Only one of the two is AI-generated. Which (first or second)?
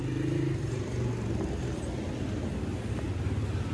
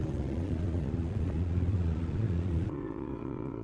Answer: second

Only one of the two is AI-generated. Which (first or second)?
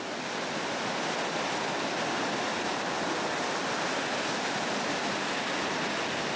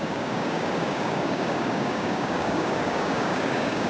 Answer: second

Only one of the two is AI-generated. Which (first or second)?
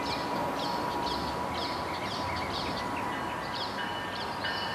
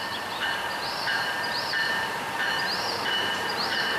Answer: second